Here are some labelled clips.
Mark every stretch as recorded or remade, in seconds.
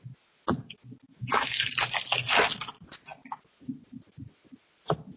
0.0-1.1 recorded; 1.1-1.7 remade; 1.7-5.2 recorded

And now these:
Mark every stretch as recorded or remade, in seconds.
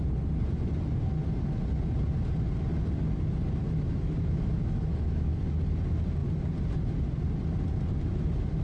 0.0-3.6 recorded; 3.6-5.4 remade; 5.4-8.6 recorded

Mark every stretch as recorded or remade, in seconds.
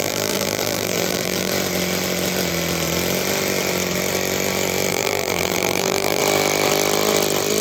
0.0-1.5 remade; 1.5-4.9 recorded; 4.9-6.2 remade; 6.2-7.6 recorded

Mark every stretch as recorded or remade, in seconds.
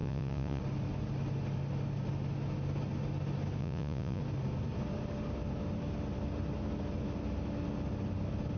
0.0-0.6 remade; 0.6-3.6 recorded; 3.6-4.2 remade; 4.2-8.6 recorded